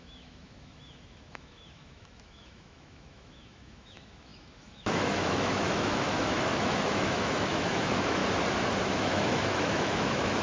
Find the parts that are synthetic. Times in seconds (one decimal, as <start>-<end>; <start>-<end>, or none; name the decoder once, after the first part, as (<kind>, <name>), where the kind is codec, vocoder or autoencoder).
0.0-8.2 (autoencoder, DAC-VAE); 8.8-10.4